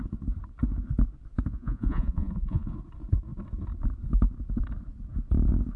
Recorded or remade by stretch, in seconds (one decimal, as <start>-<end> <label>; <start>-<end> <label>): 0.0-1.5 recorded; 1.5-2.7 remade; 2.7-5.8 recorded